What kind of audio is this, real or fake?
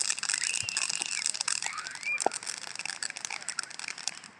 real